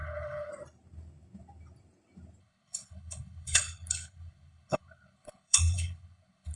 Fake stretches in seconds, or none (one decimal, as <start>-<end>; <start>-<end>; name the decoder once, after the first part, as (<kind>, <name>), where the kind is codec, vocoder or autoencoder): 0.0-0.5 (codec, HILCodec); 2.4-6.6